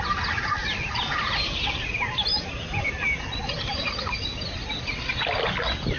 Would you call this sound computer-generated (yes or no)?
no